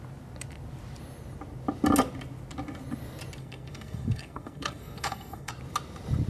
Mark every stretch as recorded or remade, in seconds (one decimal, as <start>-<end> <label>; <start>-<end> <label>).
0.0-3.4 recorded; 3.4-5.5 remade; 5.5-6.3 recorded